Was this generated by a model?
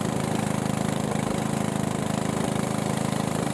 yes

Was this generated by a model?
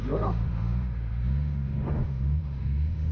yes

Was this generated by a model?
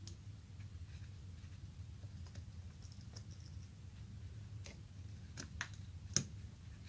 no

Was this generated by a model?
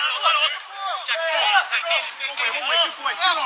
yes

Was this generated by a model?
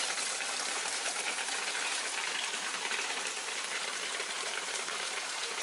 yes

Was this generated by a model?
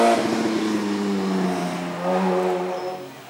no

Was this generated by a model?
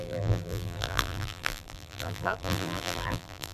yes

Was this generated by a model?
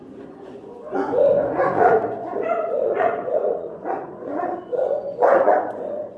yes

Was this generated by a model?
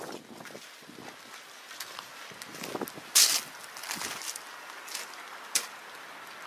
no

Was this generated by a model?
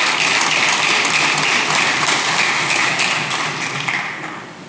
no